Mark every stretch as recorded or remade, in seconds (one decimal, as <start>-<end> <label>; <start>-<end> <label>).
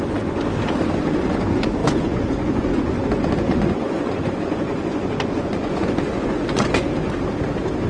0.0-0.4 remade; 0.4-1.1 recorded; 1.1-6.9 remade; 6.9-7.9 recorded